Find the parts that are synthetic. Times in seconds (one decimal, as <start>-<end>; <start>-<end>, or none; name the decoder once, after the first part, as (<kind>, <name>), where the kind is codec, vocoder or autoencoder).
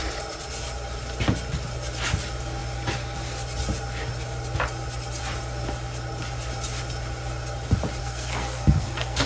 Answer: 8.0-9.3 (codec, SNAC)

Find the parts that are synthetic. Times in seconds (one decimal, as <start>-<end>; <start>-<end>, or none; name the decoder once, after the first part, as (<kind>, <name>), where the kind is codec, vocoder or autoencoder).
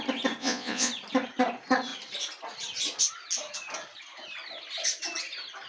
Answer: 0.4-0.9 (vocoder, Vocos)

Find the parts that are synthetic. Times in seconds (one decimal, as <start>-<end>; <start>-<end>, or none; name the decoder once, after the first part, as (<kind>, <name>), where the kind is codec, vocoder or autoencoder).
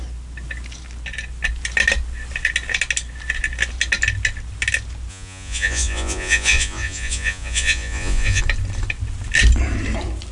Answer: 5.1-8.4 (vocoder, Vocos)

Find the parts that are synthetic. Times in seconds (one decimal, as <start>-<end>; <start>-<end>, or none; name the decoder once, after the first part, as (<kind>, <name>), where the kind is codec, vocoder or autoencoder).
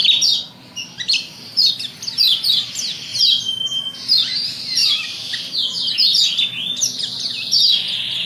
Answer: 0.0-1.7 (vocoder, BigVGAN v2); 3.1-3.8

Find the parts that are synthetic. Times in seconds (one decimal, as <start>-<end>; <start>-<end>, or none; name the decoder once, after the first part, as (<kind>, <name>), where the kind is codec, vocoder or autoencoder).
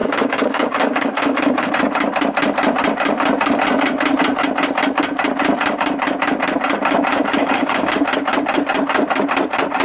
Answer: 0.0-1.7 (codec, DAC); 7.4-7.9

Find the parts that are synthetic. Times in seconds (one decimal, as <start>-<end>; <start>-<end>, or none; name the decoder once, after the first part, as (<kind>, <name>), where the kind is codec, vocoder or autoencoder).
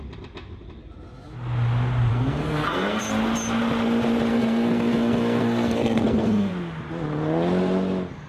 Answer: 2.1-3.0 (codec, SNAC); 4.3-6.5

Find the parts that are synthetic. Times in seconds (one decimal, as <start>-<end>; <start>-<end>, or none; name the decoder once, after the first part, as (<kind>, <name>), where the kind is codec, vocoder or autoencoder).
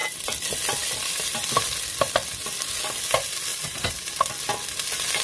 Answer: 3.5-4.3 (vocoder, BigVGAN v2)